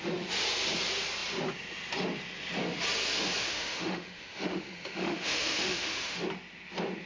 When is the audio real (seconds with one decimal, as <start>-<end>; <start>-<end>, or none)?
0.0-3.4; 6.2-7.1